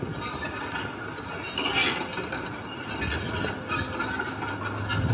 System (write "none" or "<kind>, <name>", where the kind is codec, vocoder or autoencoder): none